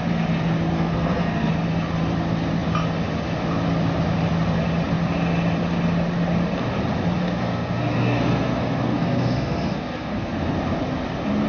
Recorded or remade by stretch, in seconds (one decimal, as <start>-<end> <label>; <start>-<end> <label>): 0.0-0.7 recorded; 0.7-1.5 remade; 1.5-7.2 recorded; 7.2-10.3 remade; 10.3-11.5 recorded